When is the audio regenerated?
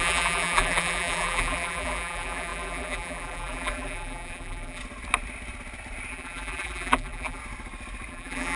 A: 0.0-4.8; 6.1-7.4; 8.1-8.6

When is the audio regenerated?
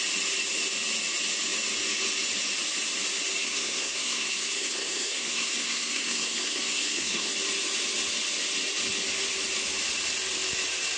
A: 3.4-7.3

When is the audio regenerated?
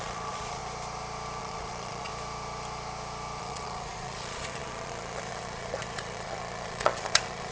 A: 0.0-0.6; 1.4-2.1; 3.4-7.5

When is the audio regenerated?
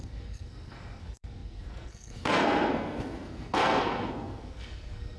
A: 0.0-5.2